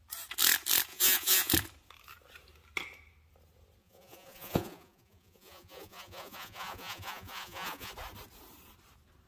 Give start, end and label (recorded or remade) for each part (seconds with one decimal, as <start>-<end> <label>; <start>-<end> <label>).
0.0-0.9 recorded; 0.9-1.5 remade; 1.5-3.8 recorded; 3.8-7.9 remade; 7.9-9.3 recorded